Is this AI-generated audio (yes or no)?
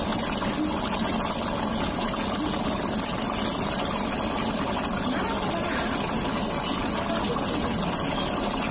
no